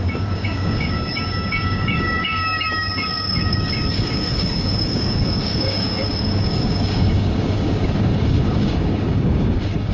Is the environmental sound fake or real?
fake